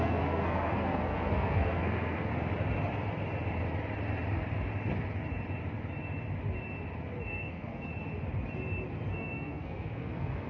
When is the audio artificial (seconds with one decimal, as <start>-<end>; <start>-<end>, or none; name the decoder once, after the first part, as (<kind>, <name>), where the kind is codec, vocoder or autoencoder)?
0.0-2.3 (codec, SNAC); 7.3-7.9; 9.1-10.5